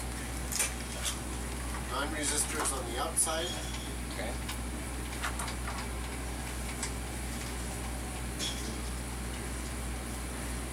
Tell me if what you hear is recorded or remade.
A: recorded